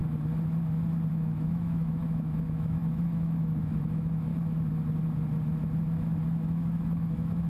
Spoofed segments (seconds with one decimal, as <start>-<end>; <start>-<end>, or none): 1.1-4.3; 6.2-7.5